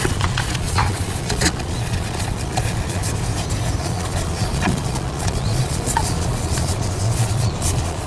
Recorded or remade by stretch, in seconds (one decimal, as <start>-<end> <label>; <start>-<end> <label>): 0.0-3.0 remade; 3.0-3.8 recorded; 3.8-8.1 remade